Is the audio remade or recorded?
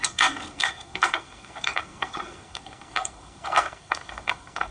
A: remade